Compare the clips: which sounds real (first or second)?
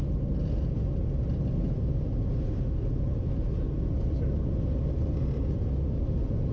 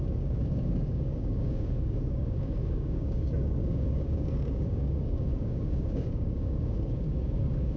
first